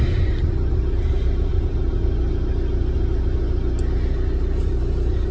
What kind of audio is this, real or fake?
real